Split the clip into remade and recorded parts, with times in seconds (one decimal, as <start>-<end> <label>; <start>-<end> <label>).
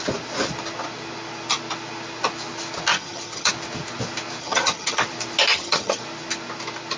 0.0-2.9 recorded; 2.9-3.5 remade; 3.5-4.4 recorded; 4.4-5.0 remade; 5.0-5.5 recorded; 5.5-6.0 remade; 6.0-7.0 recorded